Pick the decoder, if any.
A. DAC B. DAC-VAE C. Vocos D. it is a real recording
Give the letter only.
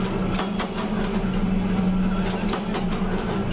D